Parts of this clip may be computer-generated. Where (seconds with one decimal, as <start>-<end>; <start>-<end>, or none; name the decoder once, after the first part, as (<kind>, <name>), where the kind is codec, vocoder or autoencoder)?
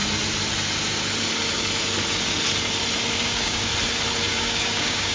3.1-3.7 (codec, DAC); 4.3-5.1